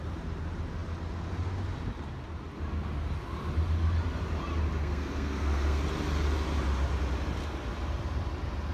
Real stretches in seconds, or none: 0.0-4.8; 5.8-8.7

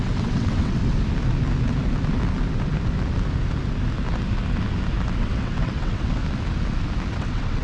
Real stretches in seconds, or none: 0.8-5.2; 6.2-7.1

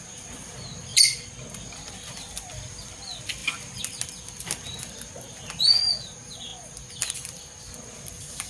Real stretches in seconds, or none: 0.0-8.5

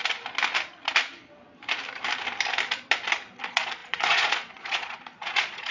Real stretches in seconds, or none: 0.0-3.4

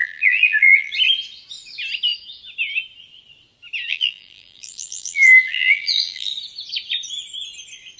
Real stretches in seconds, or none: 0.9-3.9; 6.3-8.0

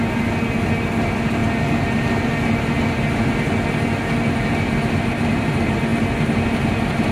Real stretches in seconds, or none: 0.0-7.1

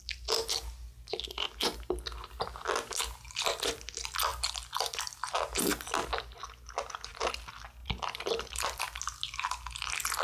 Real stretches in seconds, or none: 0.0-7.8; 8.8-10.2